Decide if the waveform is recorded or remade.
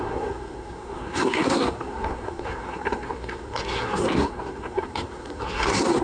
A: remade